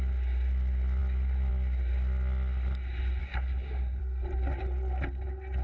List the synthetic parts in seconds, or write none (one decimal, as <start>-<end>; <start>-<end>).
3.2-4.0